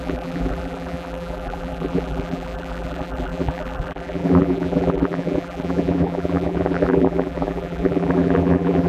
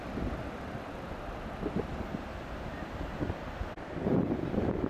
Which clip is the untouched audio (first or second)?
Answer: second